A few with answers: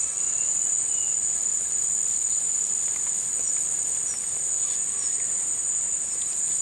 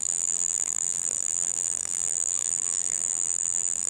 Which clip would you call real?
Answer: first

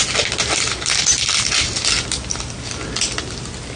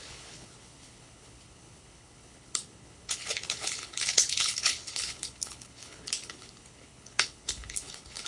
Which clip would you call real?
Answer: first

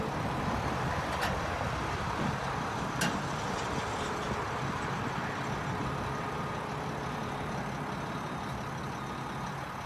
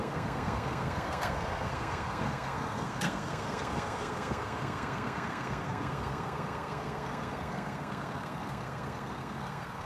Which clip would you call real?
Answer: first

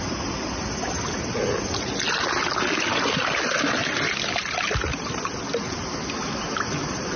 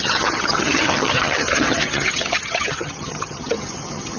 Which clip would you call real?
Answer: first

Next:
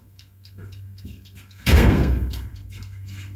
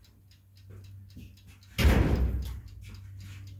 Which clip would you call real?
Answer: second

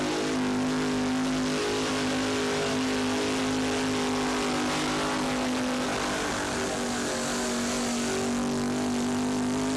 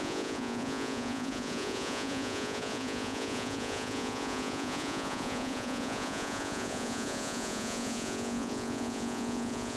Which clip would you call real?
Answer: first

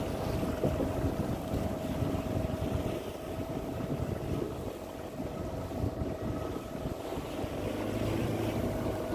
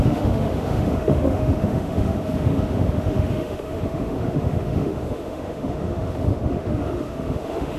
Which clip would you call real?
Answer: first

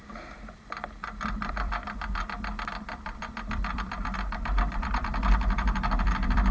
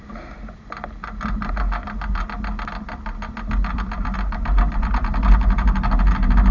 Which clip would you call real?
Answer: second